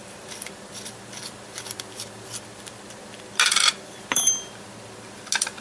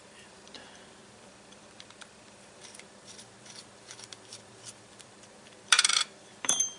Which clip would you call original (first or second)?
first